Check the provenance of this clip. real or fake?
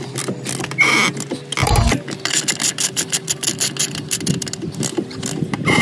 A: real